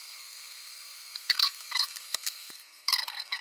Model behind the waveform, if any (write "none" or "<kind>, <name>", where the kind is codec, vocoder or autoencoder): codec, SNAC